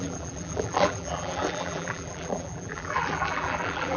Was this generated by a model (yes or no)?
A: yes